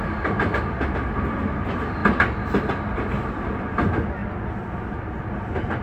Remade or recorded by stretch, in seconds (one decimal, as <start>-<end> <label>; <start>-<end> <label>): 0.0-5.8 recorded